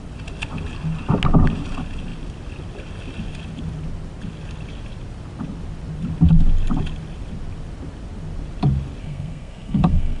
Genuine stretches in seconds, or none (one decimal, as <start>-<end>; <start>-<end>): 0.0-9.0